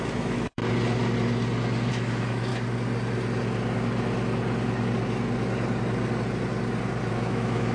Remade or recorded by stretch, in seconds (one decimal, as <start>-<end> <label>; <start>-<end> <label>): 0.0-0.6 remade; 0.6-1.9 recorded; 1.9-2.5 remade; 2.5-7.1 recorded; 7.1-7.7 remade